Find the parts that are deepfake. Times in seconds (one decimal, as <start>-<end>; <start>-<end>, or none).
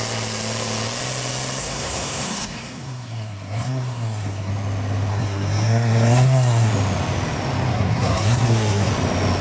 1.6-4.5; 5.1-6.7; 7.7-8.9